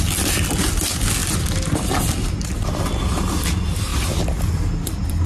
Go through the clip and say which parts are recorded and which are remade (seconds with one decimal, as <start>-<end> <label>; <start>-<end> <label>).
0.0-5.3 recorded